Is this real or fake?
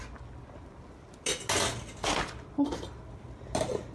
real